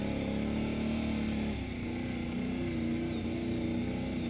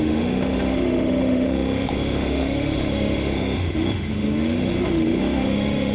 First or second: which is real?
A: first